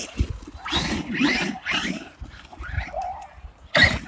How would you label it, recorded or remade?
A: recorded